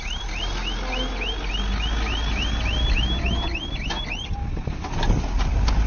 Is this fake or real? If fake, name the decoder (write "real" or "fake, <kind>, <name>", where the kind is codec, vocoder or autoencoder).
real